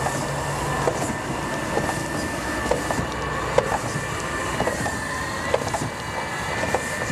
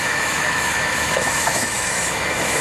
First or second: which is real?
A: first